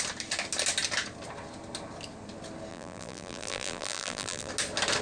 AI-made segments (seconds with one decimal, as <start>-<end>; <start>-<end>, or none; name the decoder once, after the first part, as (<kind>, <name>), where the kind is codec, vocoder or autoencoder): 2.7-4.5 (vocoder, BigVGAN v2)